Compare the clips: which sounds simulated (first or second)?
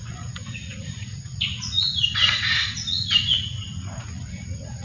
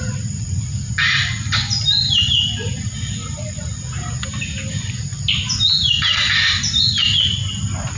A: first